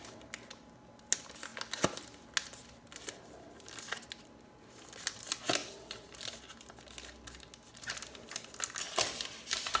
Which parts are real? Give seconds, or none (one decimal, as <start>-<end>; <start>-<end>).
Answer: 0.0-9.8